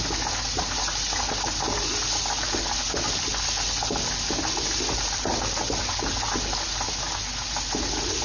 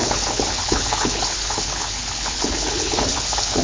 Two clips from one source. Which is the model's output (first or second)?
second